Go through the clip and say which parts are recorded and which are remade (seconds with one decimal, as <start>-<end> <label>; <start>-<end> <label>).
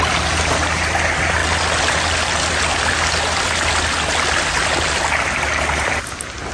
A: 0.0-6.5 recorded